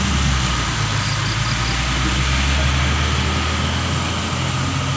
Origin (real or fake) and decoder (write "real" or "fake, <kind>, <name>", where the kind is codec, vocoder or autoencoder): real